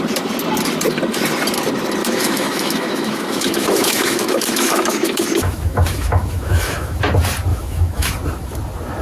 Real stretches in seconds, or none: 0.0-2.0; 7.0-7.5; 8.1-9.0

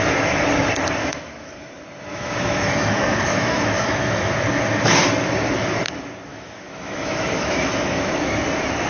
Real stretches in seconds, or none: 0.0-1.0; 1.7-2.1; 4.3-6.3; 8.3-8.9